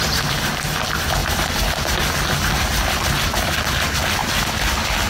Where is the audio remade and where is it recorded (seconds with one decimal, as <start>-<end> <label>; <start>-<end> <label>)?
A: 0.0-5.1 recorded